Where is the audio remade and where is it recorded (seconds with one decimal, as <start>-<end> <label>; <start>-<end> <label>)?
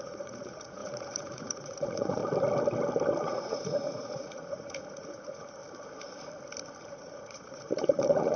0.0-2.2 remade; 2.2-3.2 recorded; 3.2-5.6 remade; 5.6-6.9 recorded; 6.9-8.4 remade